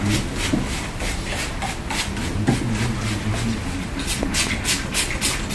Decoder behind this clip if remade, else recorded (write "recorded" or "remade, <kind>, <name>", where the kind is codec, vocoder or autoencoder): recorded